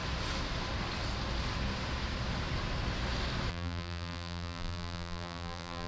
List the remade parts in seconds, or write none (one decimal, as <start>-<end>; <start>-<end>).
3.5-5.9